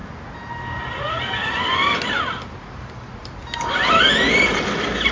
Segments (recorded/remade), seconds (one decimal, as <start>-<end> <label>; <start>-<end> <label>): 0.0-5.1 recorded